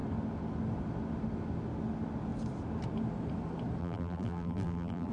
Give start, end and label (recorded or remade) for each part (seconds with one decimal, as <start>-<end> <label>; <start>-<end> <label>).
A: 0.0-3.8 recorded; 3.8-5.1 remade